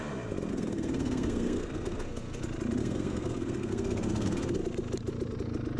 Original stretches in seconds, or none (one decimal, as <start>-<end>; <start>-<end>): 0.0-0.5; 2.4-2.8; 4.6-5.8